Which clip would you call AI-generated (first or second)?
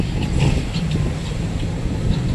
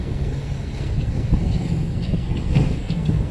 second